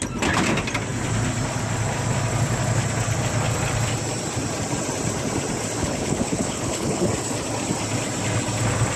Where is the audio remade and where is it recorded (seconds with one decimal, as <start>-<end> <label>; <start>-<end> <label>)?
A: 0.0-5.8 recorded; 5.8-7.1 remade; 7.1-9.0 recorded